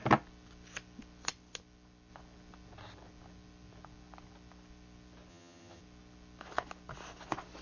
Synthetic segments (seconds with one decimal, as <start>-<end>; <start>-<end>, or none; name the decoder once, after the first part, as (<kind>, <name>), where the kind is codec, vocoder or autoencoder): 5.3-5.8 (vocoder, HiFi-GAN)